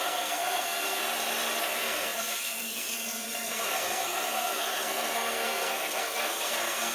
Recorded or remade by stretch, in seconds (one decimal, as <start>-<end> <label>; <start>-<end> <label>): 0.0-1.0 remade; 1.0-1.6 recorded; 1.6-6.9 remade